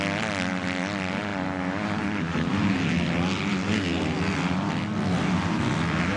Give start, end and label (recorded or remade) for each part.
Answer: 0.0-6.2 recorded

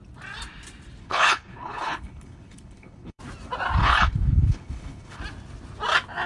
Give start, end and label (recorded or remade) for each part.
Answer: 0.0-1.0 recorded; 1.0-3.2 remade; 3.2-3.8 recorded; 3.8-5.2 remade; 5.2-6.3 recorded

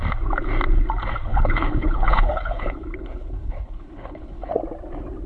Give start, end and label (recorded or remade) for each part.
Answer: 0.0-1.3 recorded; 1.3-4.5 remade; 4.5-5.3 recorded